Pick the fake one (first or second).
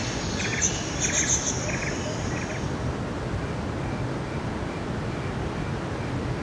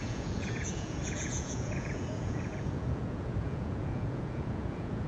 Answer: second